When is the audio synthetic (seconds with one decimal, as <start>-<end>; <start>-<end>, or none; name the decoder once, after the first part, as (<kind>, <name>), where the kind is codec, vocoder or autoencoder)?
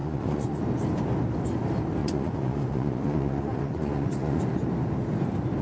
0.0-0.6 (vocoder, Vocos); 2.0-4.4